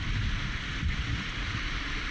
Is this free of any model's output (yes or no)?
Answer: yes